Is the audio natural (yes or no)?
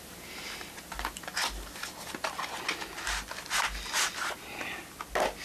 yes